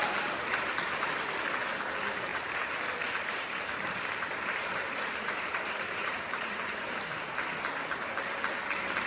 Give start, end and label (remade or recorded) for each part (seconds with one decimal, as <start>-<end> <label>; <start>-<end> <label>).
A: 0.0-2.3 recorded; 2.3-7.0 remade; 7.0-9.1 recorded